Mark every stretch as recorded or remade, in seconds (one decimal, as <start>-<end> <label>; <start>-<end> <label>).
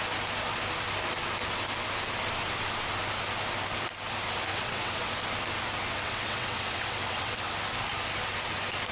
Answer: 0.0-4.5 recorded; 4.5-5.1 remade; 5.1-5.8 recorded; 5.8-7.5 remade; 7.5-8.9 recorded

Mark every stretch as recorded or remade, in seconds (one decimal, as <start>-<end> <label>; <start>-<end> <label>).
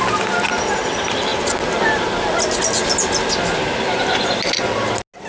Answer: 0.0-5.3 recorded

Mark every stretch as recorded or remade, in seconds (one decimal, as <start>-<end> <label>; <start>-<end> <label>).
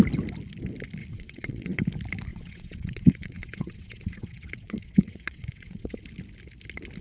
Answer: 0.0-1.0 recorded; 1.0-1.8 remade; 1.8-2.3 recorded; 2.3-6.0 remade; 6.0-7.0 recorded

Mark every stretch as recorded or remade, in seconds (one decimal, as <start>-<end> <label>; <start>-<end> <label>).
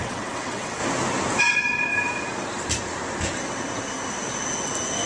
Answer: 0.0-0.8 remade; 0.8-1.4 recorded; 1.4-1.9 remade; 1.9-5.1 recorded